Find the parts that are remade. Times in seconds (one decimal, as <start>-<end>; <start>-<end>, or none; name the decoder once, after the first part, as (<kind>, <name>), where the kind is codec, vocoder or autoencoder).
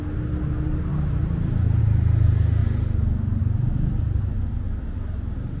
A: 0.9-1.8 (vocoder, BigVGAN v2)